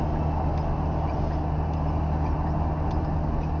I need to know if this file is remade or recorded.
recorded